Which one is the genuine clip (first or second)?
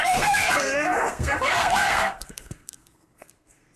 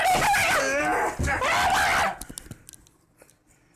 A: second